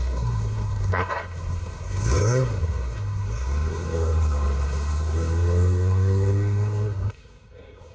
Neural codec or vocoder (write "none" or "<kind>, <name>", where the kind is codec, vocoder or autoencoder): codec, SNAC